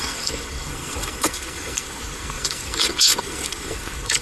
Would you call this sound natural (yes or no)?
no